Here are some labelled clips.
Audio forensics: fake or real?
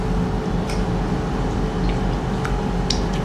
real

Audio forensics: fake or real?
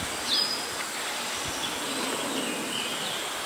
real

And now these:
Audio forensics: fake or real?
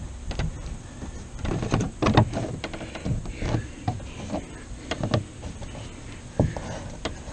real